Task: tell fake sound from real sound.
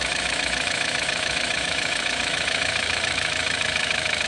fake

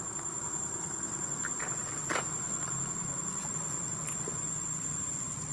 real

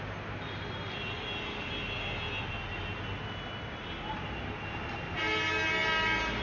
real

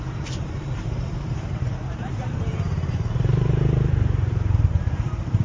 fake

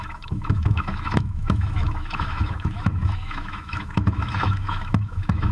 fake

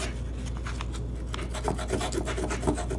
real